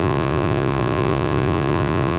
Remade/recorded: remade